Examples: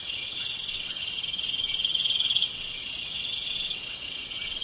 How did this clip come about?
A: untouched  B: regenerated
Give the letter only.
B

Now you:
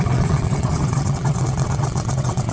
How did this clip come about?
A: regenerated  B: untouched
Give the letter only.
A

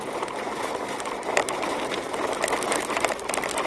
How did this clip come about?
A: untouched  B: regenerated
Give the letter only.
A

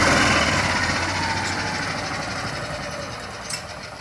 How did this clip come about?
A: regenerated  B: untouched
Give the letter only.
B